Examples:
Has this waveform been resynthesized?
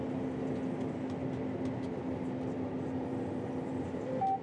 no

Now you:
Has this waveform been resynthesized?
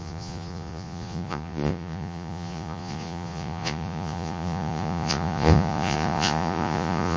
yes